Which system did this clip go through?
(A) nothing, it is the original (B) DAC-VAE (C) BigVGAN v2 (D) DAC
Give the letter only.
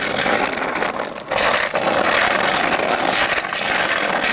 A